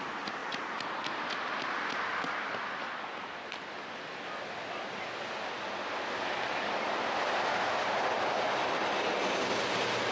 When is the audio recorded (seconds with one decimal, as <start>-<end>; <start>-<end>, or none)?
0.0-10.1